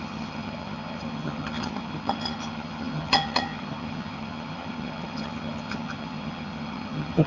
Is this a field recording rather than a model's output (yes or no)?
no